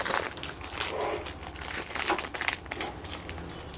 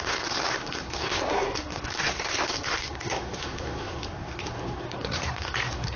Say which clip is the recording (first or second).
first